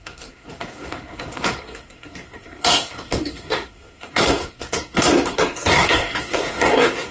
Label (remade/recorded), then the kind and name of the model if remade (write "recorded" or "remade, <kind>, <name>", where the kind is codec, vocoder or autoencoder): remade, codec, SNAC